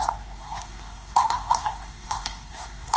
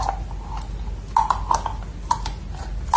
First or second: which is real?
second